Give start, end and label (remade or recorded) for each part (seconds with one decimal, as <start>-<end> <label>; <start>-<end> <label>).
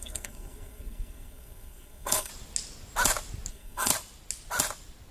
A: 0.0-2.3 remade; 2.3-3.5 recorded; 3.5-3.9 remade; 3.9-5.1 recorded